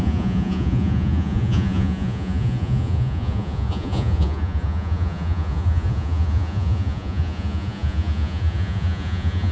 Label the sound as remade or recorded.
remade